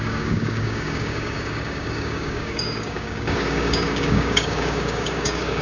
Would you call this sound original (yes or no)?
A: no